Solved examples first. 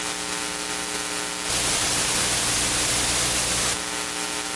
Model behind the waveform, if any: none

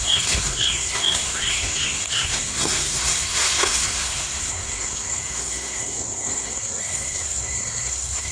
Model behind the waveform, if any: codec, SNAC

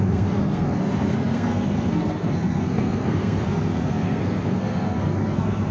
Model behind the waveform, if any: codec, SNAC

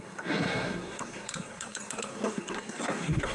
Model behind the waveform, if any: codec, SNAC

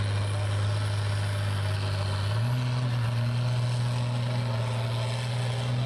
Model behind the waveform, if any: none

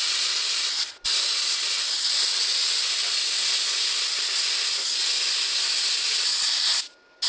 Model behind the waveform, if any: none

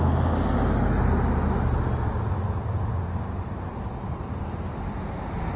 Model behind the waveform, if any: none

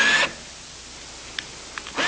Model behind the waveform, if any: none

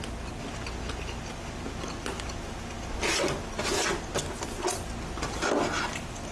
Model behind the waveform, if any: none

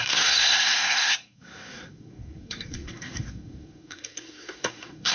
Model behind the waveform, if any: codec, SNAC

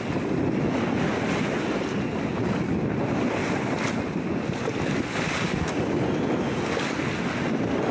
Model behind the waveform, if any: none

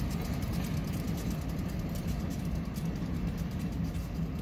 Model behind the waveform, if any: none